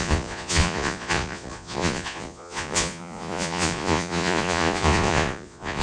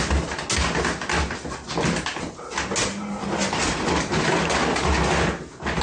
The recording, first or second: second